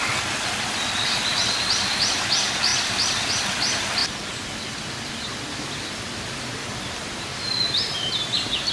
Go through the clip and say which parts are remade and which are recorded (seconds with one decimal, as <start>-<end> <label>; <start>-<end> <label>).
0.0-7.3 recorded; 7.3-8.7 remade